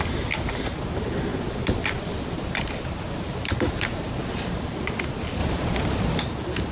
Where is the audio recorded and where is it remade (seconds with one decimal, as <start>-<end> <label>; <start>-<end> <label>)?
0.0-6.7 recorded